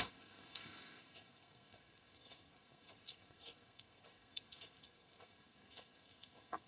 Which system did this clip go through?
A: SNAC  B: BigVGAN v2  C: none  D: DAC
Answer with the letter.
A